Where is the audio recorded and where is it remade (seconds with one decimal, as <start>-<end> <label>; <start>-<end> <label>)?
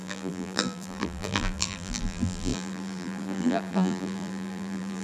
0.0-5.0 remade